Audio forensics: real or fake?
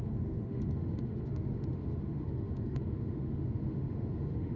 fake